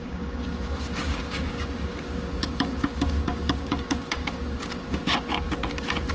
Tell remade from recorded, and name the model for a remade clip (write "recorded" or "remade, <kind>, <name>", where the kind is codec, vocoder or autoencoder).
remade, codec, DAC